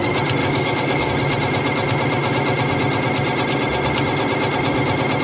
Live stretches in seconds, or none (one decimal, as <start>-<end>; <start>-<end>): 0.0-0.4; 1.1-5.2